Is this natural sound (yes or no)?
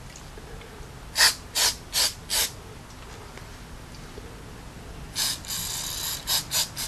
yes